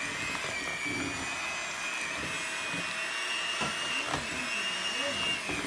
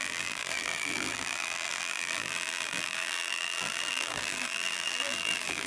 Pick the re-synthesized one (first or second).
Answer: second